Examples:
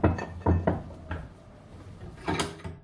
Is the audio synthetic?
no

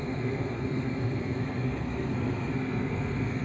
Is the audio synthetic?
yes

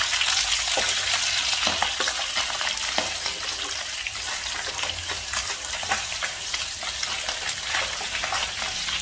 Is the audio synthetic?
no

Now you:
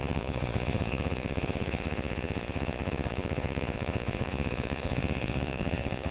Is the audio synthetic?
yes